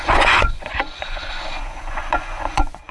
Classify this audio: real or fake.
fake